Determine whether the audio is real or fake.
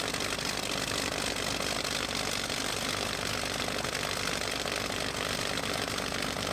real